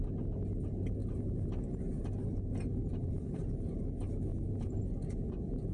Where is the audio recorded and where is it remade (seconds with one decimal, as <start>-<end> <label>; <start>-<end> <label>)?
0.0-1.0 recorded; 1.0-1.6 remade; 1.6-2.8 recorded; 2.8-3.8 remade; 3.8-4.3 recorded; 4.3-4.8 remade; 4.8-5.7 recorded